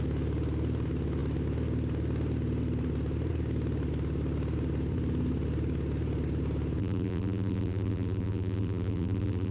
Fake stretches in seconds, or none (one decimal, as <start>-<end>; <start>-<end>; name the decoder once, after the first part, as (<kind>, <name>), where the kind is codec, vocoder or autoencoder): 6.8-9.5 (vocoder, BigVGAN v2)